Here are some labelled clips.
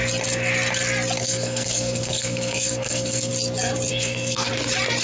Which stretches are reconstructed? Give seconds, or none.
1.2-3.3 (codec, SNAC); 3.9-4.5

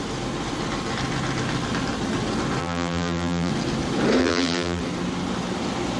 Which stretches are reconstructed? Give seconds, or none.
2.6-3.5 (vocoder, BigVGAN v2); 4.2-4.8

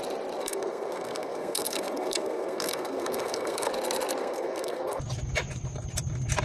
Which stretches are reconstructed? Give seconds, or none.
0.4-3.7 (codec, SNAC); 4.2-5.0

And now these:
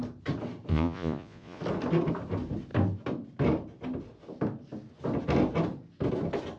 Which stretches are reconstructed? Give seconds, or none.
0.7-1.6 (vocoder, Vocos)